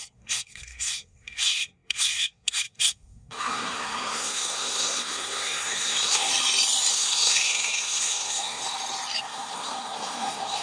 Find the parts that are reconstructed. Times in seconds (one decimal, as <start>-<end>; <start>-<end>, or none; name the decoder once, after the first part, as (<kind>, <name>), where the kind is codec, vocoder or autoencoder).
0.0-6.3 (codec, SNAC); 6.9-8.6; 9.2-10.6